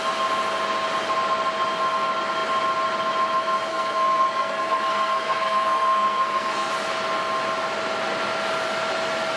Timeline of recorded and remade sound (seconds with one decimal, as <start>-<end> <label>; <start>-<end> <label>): 0.0-3.7 recorded; 3.7-6.7 remade; 6.7-9.4 recorded